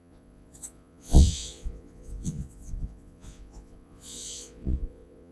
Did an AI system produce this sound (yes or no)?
yes